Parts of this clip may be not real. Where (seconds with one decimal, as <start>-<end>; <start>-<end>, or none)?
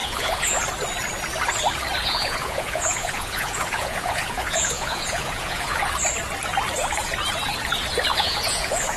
0.0-0.6; 2.0-5.9; 8.1-9.0